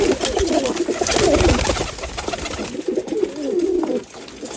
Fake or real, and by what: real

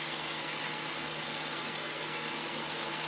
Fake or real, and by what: fake, codec, SNAC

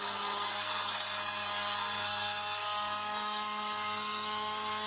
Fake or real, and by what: fake, codec, SNAC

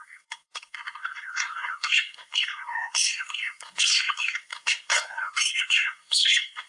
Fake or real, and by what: fake, codec, SNAC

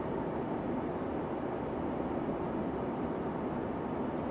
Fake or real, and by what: real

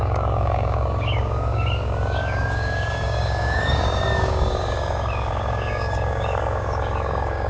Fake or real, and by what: fake, codec, DAC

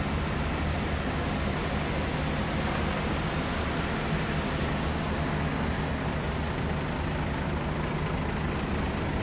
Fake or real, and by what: real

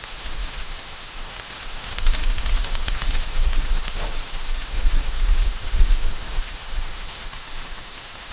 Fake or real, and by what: fake, autoencoder, DAC-VAE